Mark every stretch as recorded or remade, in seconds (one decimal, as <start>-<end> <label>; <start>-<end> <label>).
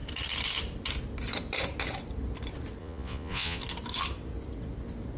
0.0-2.8 recorded; 2.8-3.6 remade; 3.6-5.2 recorded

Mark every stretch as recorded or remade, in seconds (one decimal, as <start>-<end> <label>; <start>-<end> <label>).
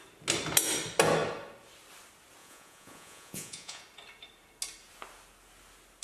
0.0-2.4 recorded; 2.4-3.8 remade; 3.8-6.0 recorded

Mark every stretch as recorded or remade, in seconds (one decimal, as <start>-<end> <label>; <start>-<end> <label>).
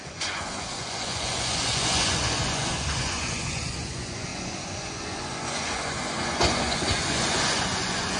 0.0-8.2 remade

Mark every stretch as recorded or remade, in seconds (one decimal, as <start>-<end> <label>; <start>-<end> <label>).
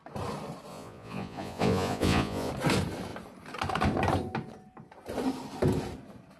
0.0-0.7 recorded; 0.7-2.5 remade; 2.5-6.4 recorded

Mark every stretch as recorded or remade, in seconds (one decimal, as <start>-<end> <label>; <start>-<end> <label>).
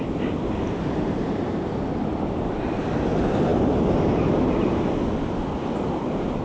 0.0-6.4 recorded